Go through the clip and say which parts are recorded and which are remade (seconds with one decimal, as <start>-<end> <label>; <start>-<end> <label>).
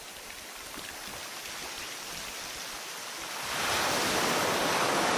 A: 0.0-5.2 recorded